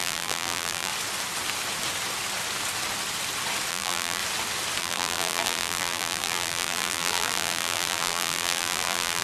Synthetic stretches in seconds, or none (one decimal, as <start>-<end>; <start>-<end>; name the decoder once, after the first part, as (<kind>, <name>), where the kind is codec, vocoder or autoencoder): 0.0-0.9 (vocoder, BigVGAN v2); 3.7-4.2; 4.8-9.2

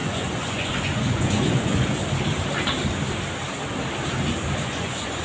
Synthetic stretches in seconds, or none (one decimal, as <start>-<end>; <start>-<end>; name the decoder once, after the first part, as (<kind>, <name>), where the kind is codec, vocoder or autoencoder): 0.0-2.0 (vocoder, Vocos); 4.6-5.2